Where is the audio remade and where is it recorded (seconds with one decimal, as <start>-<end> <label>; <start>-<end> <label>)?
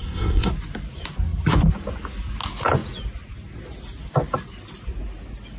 0.0-0.5 remade; 0.5-5.6 recorded